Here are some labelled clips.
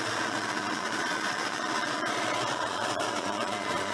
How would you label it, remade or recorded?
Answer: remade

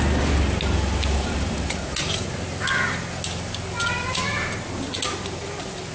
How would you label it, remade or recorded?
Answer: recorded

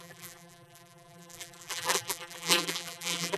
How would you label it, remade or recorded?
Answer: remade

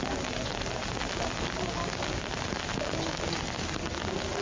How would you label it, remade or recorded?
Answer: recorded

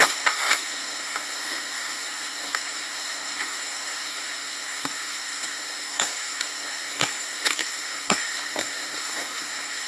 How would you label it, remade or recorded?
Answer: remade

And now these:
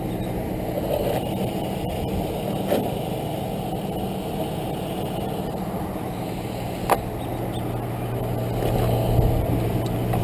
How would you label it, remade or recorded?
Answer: recorded